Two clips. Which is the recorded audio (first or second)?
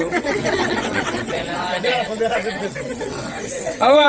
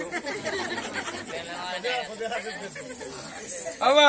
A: second